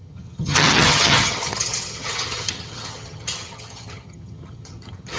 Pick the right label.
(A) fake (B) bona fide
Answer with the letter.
A